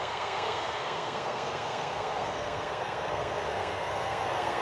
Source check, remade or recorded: remade